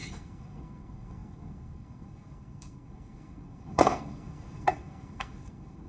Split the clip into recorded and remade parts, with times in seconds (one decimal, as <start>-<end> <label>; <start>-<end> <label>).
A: 0.0-5.9 remade